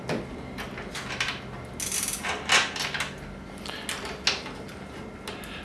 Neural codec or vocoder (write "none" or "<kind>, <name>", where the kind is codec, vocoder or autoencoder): none